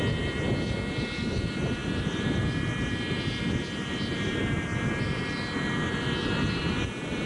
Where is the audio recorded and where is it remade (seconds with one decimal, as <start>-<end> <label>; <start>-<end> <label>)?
0.0-7.3 recorded